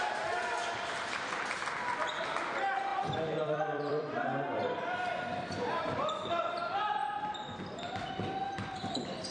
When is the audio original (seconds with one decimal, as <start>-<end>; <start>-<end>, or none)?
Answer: 0.0-2.9; 7.2-9.3